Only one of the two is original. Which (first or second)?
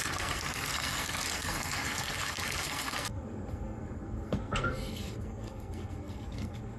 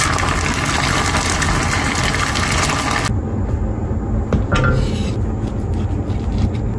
second